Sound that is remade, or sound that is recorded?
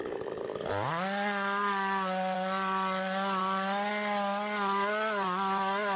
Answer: recorded